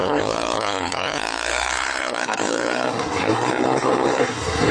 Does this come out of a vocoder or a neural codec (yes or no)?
yes